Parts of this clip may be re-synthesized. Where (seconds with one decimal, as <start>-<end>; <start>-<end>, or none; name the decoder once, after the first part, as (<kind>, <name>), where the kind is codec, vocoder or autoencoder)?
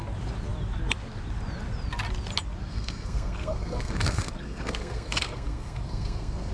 2.7-6.5 (codec, SNAC)